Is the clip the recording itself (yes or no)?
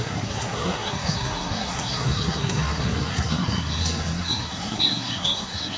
no